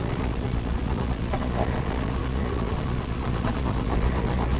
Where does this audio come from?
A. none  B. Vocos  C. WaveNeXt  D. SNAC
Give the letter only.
B